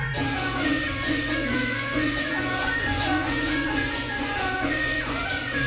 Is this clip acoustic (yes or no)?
no